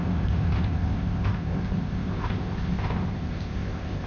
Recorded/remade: remade